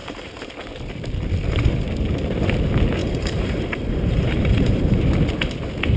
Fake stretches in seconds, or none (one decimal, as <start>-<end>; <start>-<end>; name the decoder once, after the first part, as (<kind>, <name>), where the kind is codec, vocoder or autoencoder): 0.0-0.5 (vocoder, BigVGAN v2); 3.0-5.0